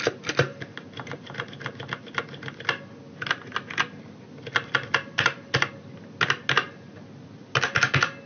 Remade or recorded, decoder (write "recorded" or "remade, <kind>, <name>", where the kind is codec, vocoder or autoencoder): recorded